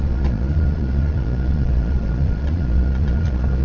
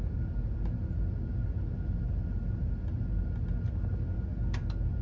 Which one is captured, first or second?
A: second